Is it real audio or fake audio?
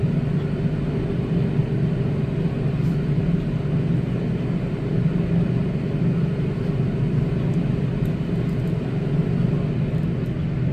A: real